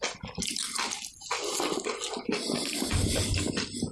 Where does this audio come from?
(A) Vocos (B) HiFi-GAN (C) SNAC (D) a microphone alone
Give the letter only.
D